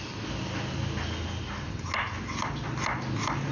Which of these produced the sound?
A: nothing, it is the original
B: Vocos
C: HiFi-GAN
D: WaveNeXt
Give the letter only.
A